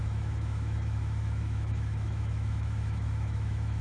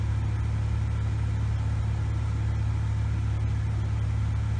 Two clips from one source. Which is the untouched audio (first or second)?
second